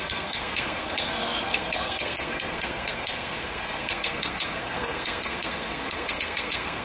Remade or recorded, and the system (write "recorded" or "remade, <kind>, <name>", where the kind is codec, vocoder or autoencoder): remade, codec, SNAC